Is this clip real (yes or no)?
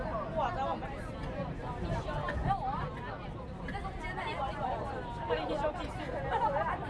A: yes